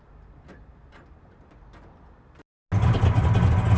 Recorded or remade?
recorded